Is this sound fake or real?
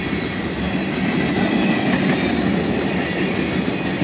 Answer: real